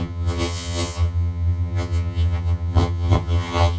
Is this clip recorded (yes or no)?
no